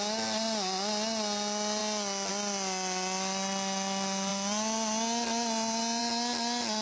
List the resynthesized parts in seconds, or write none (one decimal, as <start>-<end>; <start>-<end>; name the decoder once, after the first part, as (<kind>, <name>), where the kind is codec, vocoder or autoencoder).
none